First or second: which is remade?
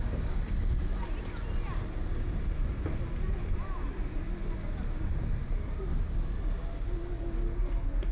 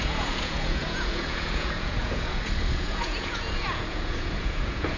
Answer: second